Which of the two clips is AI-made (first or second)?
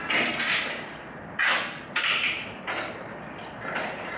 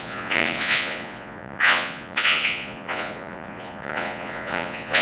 second